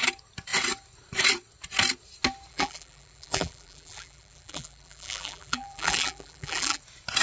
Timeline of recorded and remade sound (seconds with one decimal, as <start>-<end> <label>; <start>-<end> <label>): 0.0-2.5 recorded; 2.5-6.8 remade; 6.8-7.2 recorded